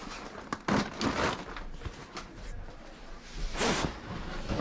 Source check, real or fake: real